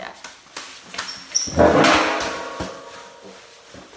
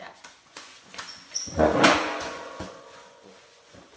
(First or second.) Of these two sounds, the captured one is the first